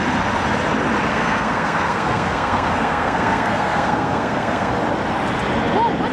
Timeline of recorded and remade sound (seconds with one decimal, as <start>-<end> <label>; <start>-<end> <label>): 0.0-1.1 recorded; 1.1-4.7 remade; 4.7-6.1 recorded